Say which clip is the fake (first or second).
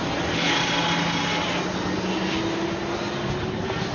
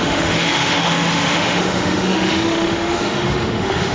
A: second